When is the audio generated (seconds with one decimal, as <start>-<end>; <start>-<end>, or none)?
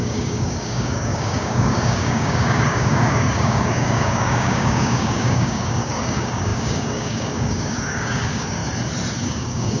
0.0-8.6; 9.2-9.8